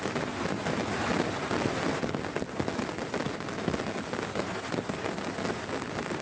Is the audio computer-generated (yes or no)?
no